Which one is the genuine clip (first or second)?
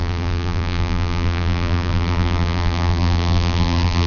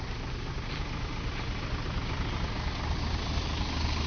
second